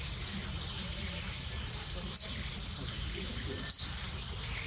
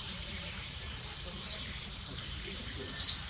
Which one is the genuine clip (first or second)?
first